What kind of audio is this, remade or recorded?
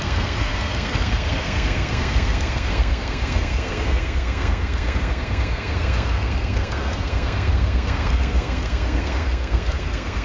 remade